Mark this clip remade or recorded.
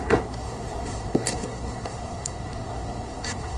remade